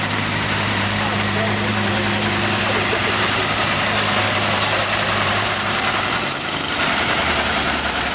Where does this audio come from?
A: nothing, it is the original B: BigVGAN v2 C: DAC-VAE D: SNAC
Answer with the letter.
B